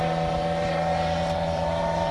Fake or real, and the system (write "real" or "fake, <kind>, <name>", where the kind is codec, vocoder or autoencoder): fake, vocoder, BigVGAN v2